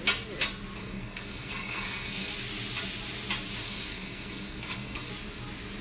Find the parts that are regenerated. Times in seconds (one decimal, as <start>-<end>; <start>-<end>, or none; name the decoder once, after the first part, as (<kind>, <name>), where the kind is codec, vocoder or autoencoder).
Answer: 0.8-2.3 (codec, SNAC); 3.6-5.1